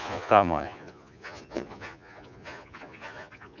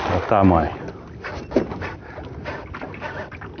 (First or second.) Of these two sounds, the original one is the second